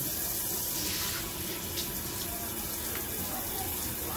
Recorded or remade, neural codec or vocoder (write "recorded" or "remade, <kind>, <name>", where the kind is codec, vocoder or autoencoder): recorded